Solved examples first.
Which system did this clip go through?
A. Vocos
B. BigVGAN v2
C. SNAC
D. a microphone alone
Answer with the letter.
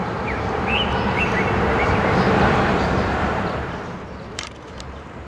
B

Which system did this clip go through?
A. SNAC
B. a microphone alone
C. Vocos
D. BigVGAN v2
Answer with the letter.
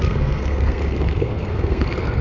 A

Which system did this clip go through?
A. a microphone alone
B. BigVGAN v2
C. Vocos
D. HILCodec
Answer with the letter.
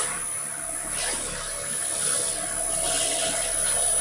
A